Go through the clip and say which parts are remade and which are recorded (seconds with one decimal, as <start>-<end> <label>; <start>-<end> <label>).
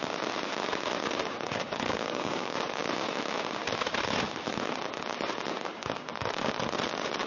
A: 0.0-1.0 recorded; 1.0-2.8 remade; 2.8-5.7 recorded; 5.7-6.6 remade; 6.6-7.3 recorded